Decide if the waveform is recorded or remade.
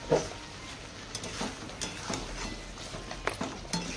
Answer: recorded